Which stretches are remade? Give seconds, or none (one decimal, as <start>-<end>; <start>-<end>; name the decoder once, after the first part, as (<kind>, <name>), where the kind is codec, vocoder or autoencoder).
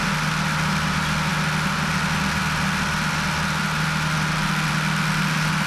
none